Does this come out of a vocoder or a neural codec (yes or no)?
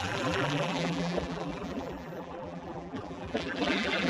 yes